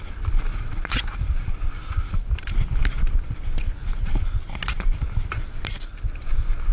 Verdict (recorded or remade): recorded